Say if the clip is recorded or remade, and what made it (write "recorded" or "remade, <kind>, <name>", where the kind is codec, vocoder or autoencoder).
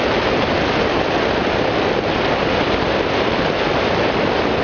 recorded